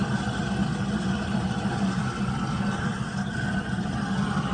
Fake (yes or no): no